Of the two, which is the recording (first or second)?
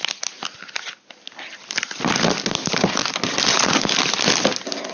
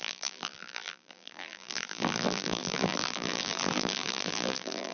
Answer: first